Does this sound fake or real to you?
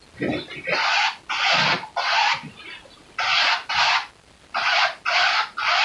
real